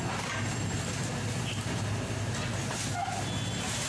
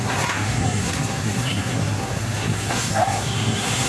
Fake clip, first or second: second